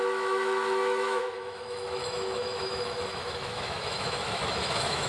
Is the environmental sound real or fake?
fake